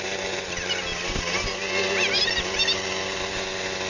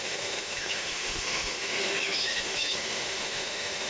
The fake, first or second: second